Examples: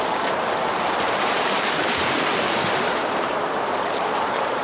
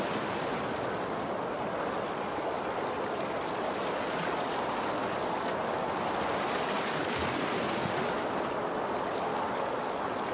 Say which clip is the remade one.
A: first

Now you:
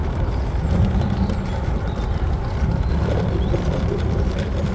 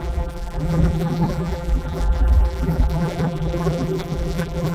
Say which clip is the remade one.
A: second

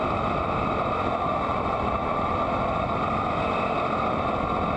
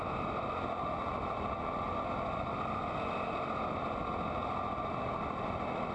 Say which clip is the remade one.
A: first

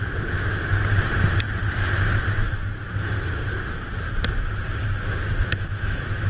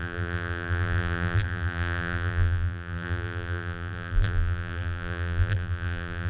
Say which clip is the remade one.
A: second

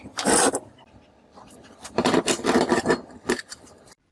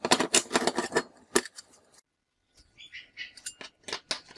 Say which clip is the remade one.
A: first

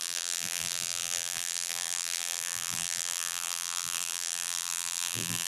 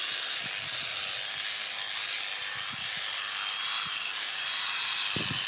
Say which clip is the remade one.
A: first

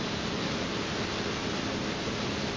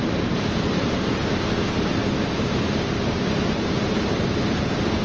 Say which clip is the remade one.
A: second